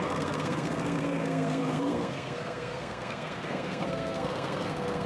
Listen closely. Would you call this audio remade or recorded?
remade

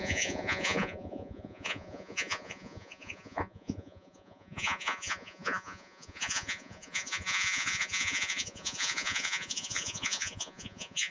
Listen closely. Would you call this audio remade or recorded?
remade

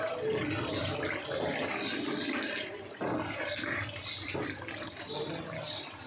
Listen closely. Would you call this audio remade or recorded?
recorded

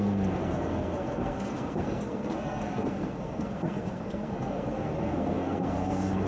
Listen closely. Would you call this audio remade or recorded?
remade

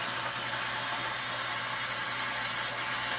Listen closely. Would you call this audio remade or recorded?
recorded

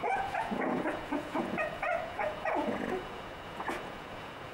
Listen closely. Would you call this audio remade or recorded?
remade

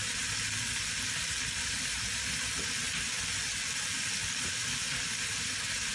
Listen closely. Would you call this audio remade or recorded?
recorded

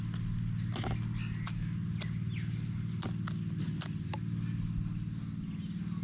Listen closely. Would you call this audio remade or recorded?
recorded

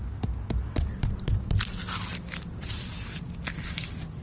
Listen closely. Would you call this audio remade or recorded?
recorded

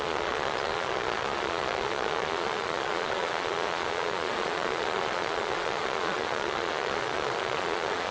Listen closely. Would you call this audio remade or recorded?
remade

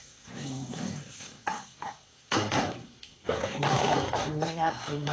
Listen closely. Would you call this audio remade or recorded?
remade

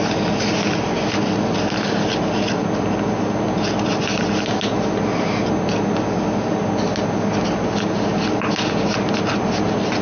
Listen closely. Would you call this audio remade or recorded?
recorded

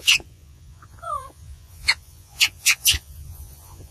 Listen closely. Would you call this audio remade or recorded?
remade